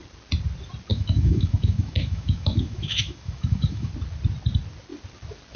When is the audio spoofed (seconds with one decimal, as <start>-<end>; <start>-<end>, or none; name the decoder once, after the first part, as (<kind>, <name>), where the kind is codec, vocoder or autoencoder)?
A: 0.9-3.9 (autoencoder, DAC-VAE)